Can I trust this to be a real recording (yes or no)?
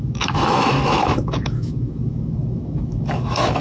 no